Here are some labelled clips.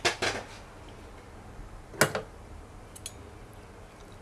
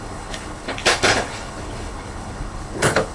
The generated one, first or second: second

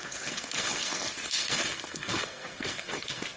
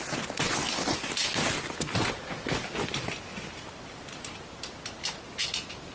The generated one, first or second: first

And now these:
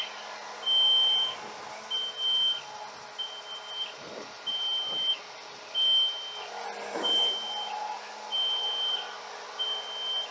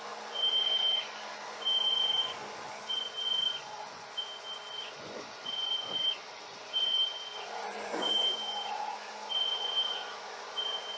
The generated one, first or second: second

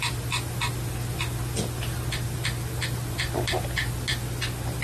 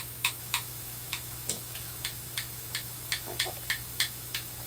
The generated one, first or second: second